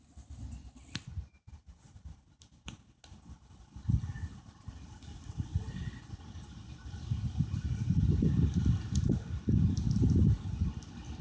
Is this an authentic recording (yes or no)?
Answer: yes